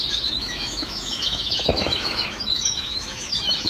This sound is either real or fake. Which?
fake